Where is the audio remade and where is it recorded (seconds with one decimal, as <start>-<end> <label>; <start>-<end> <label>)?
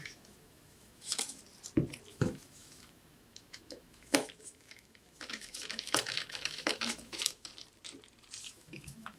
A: 0.0-1.4 remade; 1.4-2.1 recorded; 2.1-7.5 remade; 7.5-8.4 recorded; 8.4-9.2 remade